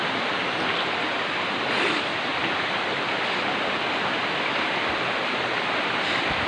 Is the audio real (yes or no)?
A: yes